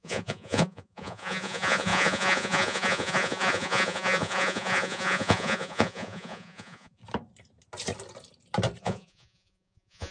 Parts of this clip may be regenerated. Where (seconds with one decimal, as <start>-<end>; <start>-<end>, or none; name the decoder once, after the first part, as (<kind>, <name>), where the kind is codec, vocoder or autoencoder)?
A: 0.0-7.0 (vocoder, Vocos); 8.8-10.1